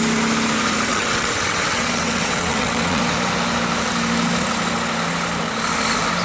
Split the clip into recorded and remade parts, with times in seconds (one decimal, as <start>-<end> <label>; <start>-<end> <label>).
0.0-0.9 recorded; 0.9-3.0 remade; 3.0-6.2 recorded